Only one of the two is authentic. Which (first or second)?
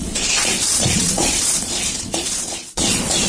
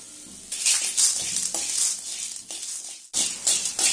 second